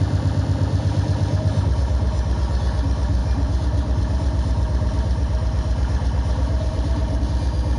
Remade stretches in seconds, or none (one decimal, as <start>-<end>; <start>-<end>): 3.2-7.2